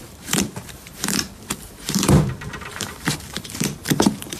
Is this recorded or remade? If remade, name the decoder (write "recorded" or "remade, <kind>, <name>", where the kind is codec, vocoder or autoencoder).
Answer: remade, vocoder, BigVGAN v2